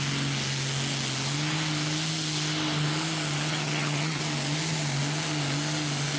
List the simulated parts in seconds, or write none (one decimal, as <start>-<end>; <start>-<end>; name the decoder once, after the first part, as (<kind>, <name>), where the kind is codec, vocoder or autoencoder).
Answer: 3.5-4.2 (vocoder, HiFi-GAN)